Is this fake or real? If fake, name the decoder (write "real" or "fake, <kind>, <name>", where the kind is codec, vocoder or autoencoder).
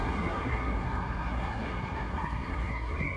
fake, codec, SNAC